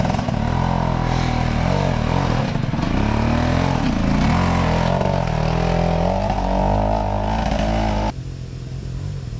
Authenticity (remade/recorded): recorded